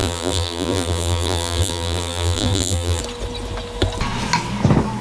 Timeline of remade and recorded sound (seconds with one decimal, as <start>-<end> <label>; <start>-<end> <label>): 0.0-3.0 remade; 3.0-5.0 recorded